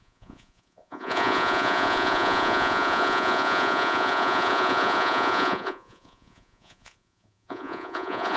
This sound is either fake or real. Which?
fake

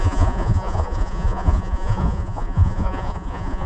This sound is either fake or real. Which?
fake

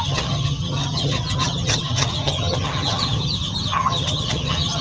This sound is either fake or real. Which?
fake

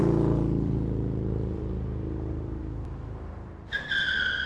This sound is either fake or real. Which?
fake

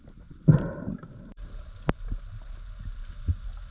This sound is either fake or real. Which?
real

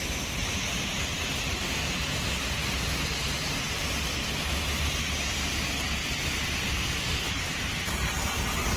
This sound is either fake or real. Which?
real